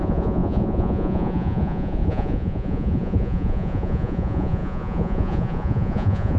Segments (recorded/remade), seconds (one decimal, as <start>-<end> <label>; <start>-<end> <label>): 0.0-6.4 remade